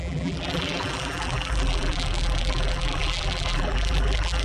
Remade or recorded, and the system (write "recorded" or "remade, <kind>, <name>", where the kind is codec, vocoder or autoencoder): remade, vocoder, BigVGAN v2